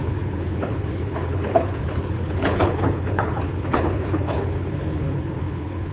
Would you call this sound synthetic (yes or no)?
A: yes